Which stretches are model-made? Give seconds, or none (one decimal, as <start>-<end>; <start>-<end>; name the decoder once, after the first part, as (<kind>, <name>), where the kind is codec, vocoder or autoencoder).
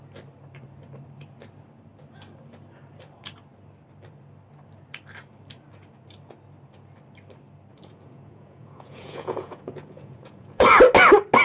7.7-10.7 (vocoder, Vocos)